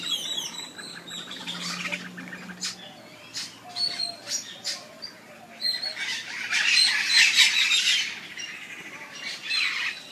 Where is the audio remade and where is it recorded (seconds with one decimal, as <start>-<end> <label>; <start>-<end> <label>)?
0.0-0.9 recorded; 0.9-1.4 remade; 1.4-10.1 recorded